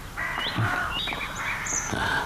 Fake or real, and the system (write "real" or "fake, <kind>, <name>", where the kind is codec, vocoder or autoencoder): fake, vocoder, BigVGAN v2